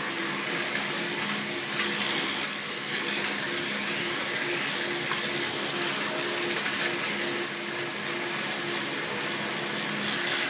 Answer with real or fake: real